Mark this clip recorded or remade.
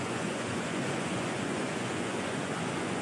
remade